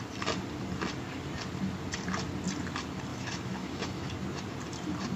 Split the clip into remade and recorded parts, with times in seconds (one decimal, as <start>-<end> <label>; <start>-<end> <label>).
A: 0.0-3.1 recorded; 3.1-4.1 remade; 4.1-5.2 recorded